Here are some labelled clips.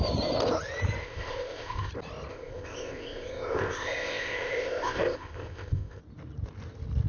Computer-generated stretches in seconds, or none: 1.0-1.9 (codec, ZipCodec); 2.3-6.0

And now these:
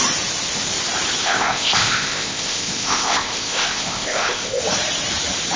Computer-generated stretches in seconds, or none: 1.2-4.6 (codec, ZipCodec)

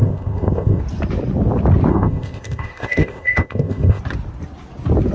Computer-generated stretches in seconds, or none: 0.0-0.8 (codec, ZipCodec); 1.9-4.0

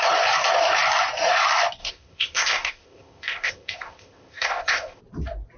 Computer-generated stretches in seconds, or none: 1.8-5.0 (codec, ZipCodec)

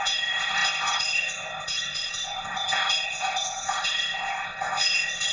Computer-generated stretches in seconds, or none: 0.0-5.3 (codec, ZipCodec)

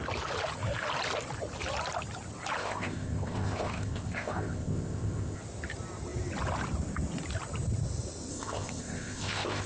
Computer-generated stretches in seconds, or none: 2.6-5.4 (codec, ZipCodec); 8.3-9.7

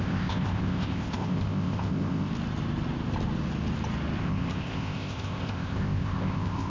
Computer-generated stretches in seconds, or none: 0.0-2.3 (codec, ZipCodec); 4.2-6.7